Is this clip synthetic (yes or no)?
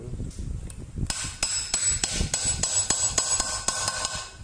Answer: no